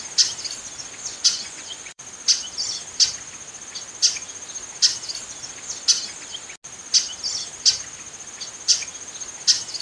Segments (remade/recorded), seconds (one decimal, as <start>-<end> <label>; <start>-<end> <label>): 0.0-1.1 recorded; 1.1-2.0 remade; 2.0-9.8 recorded